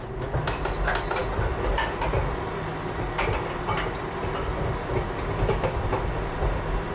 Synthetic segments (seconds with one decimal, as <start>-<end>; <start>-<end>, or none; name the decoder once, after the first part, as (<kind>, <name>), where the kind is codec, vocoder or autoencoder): none